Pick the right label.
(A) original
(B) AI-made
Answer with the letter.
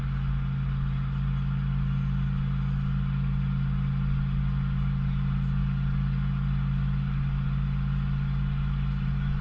A